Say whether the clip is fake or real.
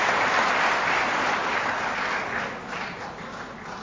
real